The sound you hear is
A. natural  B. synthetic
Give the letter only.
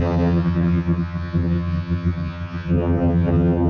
B